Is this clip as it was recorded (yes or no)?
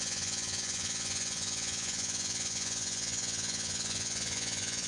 no